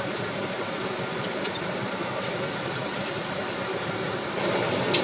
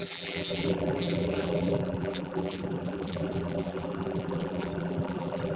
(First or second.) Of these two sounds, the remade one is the second